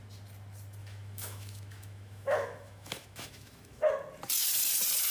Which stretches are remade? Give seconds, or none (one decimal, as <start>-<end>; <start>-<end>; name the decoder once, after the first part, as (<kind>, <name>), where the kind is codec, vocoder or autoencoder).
0.8-3.9 (autoencoder, DAC-VAE)